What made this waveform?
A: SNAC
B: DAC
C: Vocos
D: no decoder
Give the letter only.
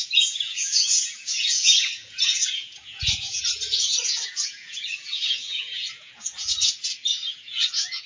C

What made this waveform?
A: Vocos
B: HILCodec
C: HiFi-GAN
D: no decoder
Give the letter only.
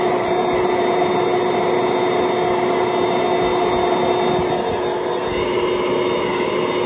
D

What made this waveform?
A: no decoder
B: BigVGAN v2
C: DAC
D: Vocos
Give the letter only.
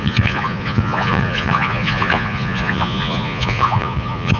D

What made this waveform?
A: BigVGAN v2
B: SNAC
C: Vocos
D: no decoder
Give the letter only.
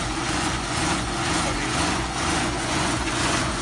C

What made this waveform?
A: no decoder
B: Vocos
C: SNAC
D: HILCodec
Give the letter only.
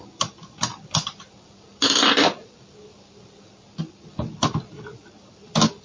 A